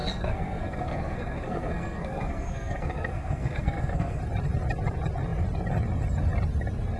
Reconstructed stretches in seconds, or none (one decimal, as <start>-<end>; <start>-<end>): 0.0-4.2